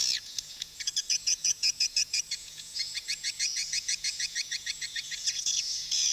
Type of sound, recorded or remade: remade